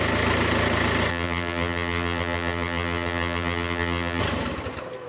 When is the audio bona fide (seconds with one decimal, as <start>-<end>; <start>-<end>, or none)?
0.0-1.1; 4.2-5.1